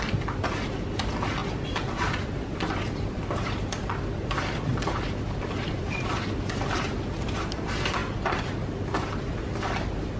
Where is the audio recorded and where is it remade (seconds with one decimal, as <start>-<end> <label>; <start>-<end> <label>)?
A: 0.0-10.2 recorded